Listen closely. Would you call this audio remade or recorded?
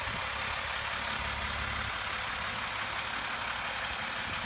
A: recorded